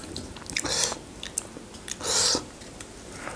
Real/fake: real